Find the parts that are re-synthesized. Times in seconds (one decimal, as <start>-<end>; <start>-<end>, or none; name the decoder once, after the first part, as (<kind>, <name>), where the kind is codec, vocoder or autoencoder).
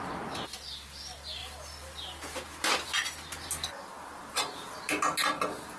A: none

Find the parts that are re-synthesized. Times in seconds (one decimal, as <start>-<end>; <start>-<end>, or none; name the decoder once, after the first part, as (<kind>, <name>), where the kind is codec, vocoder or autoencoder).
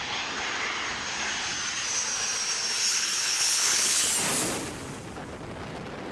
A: 2.9-4.1 (codec, HILCodec)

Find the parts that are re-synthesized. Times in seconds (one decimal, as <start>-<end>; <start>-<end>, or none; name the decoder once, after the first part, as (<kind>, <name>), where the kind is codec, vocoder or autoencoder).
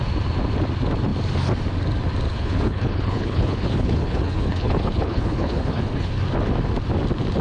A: 2.3-6.1 (codec, HILCodec)